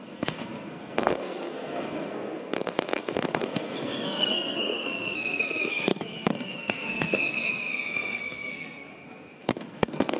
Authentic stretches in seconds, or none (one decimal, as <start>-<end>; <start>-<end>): none

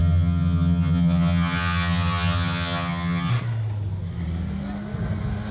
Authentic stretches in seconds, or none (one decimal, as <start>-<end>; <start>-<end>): 3.3-5.5

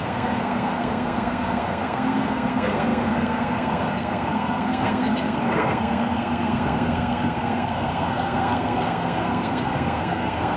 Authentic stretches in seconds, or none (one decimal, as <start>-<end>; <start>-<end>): none

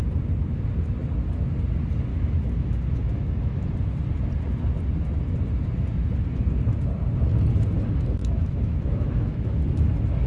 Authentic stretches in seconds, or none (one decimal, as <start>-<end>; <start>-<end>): 0.0-2.1; 3.7-8.2; 9.6-10.3

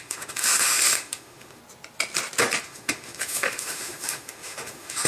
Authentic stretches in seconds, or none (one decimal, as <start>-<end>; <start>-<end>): 1.6-2.6

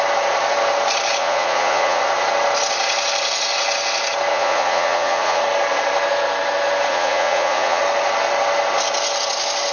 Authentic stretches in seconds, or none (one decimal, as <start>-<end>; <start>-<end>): 0.0-1.2; 2.0-4.3; 5.4-6.9; 7.8-9.7